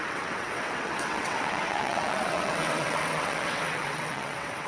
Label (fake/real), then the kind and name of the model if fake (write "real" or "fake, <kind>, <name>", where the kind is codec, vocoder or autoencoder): fake, vocoder, WaveNeXt